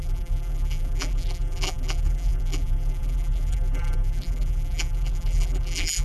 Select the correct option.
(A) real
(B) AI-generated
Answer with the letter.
B